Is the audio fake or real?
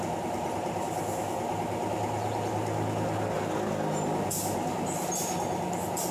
real